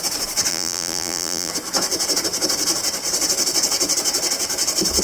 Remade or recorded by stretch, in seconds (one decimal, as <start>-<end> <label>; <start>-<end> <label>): 0.0-0.5 recorded; 0.5-1.5 remade; 1.5-5.0 recorded